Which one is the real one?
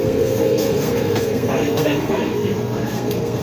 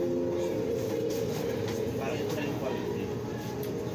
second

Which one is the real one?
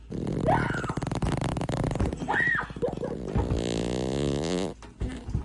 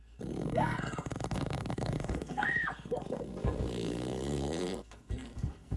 first